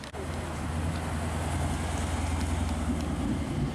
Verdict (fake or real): real